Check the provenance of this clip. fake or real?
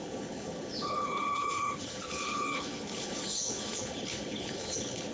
fake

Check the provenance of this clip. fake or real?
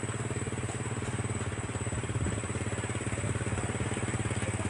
real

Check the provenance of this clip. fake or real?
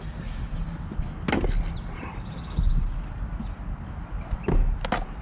real